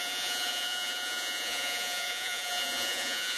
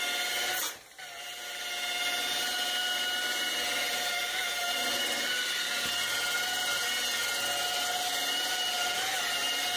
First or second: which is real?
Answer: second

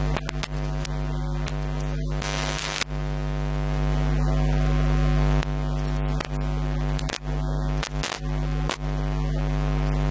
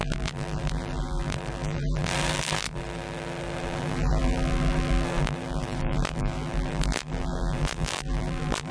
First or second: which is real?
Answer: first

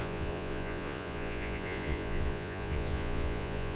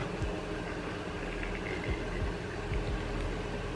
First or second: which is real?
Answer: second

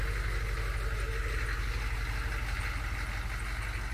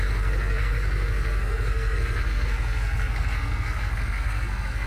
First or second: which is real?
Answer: first